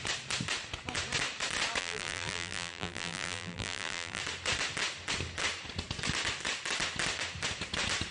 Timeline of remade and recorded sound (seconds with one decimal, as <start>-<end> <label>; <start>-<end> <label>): 0.0-1.8 recorded; 1.8-4.2 remade; 4.2-8.1 recorded